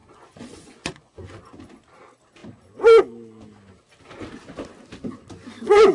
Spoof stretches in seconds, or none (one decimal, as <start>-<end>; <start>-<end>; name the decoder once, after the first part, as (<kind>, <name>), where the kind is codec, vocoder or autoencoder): 0.0-1.4 (vocoder, Vocos)